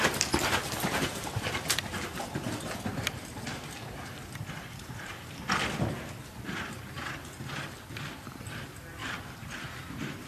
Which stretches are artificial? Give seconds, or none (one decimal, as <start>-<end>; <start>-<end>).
0.0-10.3